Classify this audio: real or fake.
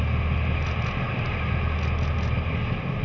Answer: real